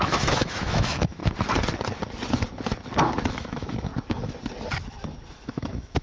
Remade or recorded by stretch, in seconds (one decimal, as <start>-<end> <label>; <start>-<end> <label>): 0.0-1.2 remade; 1.2-3.3 recorded; 3.3-3.9 remade; 3.9-5.3 recorded; 5.3-6.0 remade